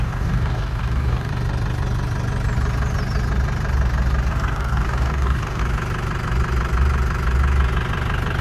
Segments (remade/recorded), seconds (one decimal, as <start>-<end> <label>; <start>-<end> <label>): 0.0-1.3 remade; 1.3-4.3 recorded; 4.3-5.6 remade; 5.6-8.4 recorded